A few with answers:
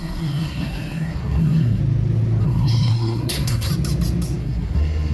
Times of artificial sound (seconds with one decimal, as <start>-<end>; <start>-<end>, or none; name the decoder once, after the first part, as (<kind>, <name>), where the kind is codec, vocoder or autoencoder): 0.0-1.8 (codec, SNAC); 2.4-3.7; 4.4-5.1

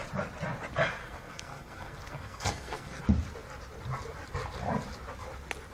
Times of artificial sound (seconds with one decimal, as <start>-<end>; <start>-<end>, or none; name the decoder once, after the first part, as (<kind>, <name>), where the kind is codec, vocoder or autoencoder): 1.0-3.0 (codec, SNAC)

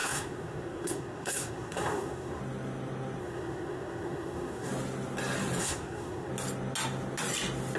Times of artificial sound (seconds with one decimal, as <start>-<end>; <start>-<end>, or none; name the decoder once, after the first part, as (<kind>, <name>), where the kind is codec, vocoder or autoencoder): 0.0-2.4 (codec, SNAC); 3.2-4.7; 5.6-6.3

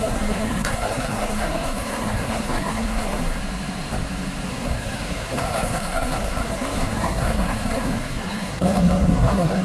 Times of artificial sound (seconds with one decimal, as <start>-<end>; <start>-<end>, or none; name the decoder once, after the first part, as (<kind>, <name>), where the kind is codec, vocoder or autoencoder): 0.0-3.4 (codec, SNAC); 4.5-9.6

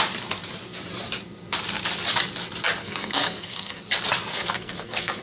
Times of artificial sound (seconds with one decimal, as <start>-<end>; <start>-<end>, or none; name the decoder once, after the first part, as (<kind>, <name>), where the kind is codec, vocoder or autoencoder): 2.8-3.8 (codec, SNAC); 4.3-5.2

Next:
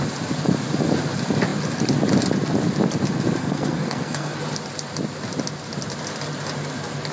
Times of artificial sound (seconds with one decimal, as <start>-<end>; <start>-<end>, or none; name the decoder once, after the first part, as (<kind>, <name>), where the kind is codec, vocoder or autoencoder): 3.4-4.4 (codec, SNAC)